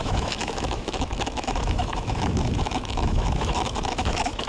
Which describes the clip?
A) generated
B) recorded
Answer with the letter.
A